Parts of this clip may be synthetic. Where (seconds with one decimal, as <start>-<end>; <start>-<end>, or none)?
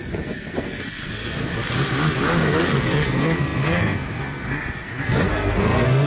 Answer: 0.0-1.5; 2.6-6.1